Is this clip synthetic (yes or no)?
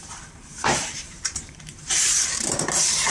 yes